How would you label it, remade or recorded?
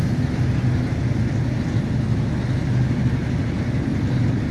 recorded